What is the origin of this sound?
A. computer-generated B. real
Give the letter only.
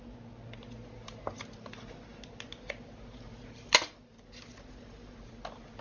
B